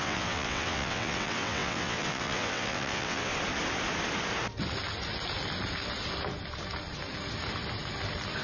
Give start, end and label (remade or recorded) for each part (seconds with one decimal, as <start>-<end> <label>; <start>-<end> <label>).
0.0-3.3 remade; 3.3-8.4 recorded